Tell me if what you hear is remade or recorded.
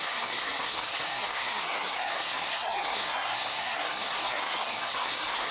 remade